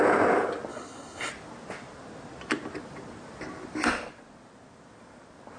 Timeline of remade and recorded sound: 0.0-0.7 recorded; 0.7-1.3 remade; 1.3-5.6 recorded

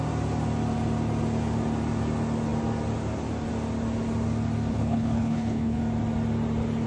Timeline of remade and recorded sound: 0.0-4.7 recorded; 4.7-5.8 remade; 5.8-6.9 recorded

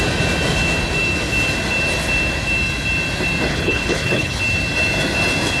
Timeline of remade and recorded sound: 0.0-3.5 recorded; 3.5-4.4 remade; 4.4-5.6 recorded

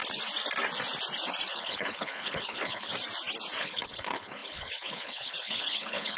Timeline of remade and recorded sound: 0.0-1.5 recorded; 1.5-2.9 remade; 2.9-3.6 recorded; 3.6-6.2 remade

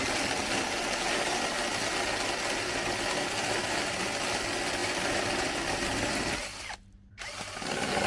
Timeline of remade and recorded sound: 0.0-8.1 recorded

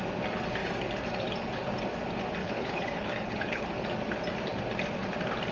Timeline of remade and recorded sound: 0.0-2.4 recorded; 2.4-3.7 remade; 3.7-5.5 recorded

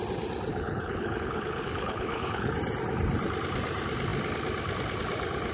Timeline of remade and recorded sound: 0.0-0.5 recorded; 0.5-2.5 remade; 2.5-5.5 recorded